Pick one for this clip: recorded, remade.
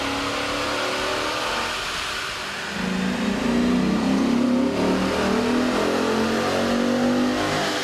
recorded